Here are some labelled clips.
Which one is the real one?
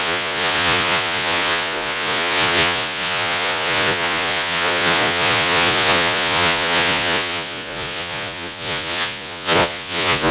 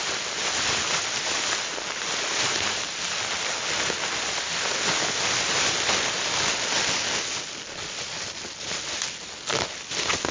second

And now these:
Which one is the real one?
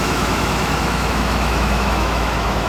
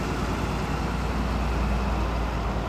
second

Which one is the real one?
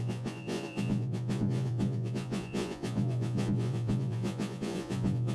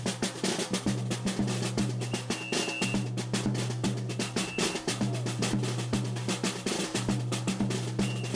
second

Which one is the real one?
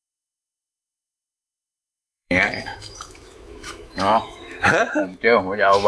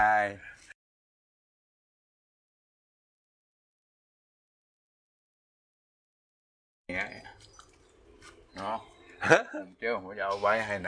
second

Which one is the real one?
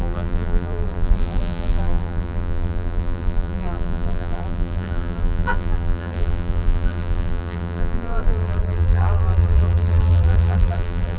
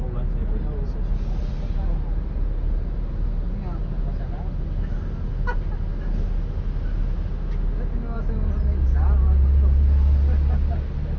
second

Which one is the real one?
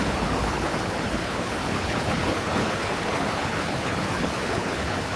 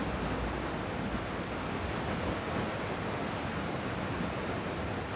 second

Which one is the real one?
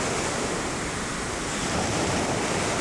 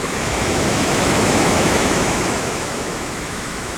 first